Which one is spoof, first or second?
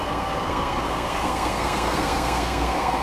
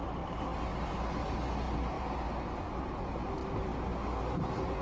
first